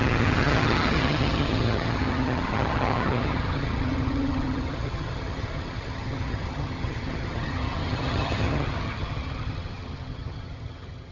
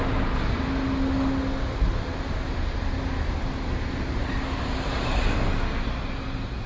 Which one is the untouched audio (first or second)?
second